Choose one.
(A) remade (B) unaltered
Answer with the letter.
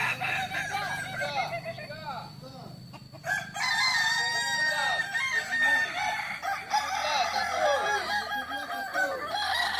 B